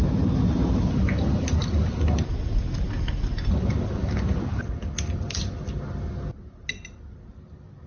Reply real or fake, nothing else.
real